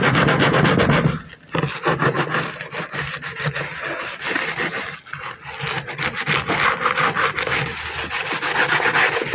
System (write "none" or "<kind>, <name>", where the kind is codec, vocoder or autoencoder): none